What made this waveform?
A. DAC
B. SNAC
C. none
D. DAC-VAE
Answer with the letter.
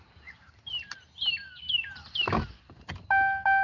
C